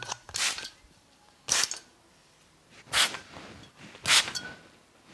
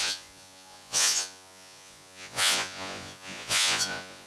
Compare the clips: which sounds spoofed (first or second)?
second